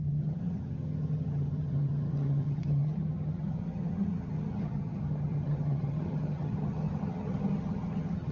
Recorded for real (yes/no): no